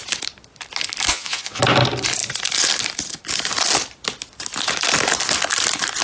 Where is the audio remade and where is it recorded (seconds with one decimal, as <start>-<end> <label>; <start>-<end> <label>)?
0.0-1.1 recorded; 1.1-1.6 remade; 1.6-6.0 recorded